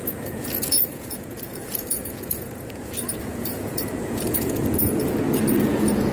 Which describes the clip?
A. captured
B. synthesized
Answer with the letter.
B